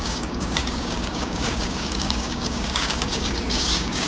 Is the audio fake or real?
fake